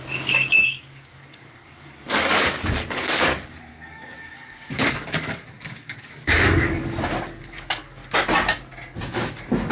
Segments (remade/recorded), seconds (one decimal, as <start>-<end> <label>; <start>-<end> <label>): 0.0-6.8 remade; 6.8-7.4 recorded; 7.4-8.0 remade; 8.0-9.7 recorded